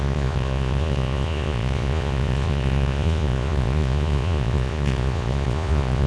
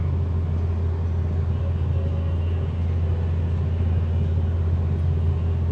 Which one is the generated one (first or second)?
first